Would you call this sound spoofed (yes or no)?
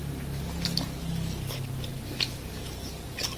no